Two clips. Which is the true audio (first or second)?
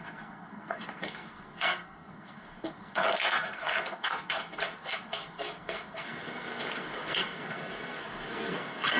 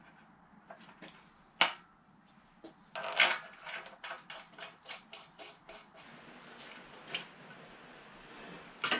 second